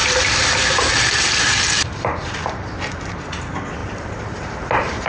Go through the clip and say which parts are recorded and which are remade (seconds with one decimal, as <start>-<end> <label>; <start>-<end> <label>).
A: 0.0-3.1 remade; 3.1-3.8 recorded; 3.8-5.1 remade